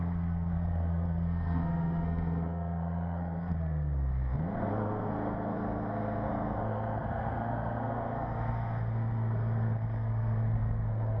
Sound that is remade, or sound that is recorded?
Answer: remade